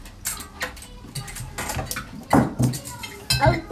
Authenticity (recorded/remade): recorded